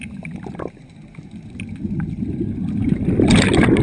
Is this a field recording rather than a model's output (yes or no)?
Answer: yes